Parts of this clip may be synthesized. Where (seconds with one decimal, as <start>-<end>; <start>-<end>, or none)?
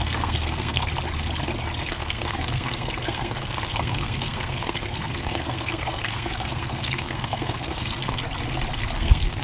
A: 0.0-0.9; 1.8-8.2; 9.0-9.4